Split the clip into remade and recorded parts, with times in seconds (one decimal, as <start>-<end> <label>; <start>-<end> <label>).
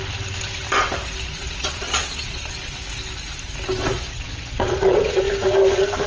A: 0.0-1.4 recorded; 1.4-2.5 remade; 2.5-3.9 recorded; 3.9-5.3 remade; 5.3-6.1 recorded